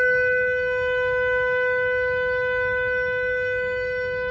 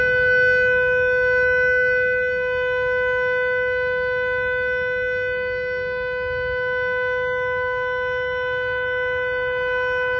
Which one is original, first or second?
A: second